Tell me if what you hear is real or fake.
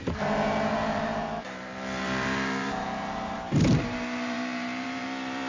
fake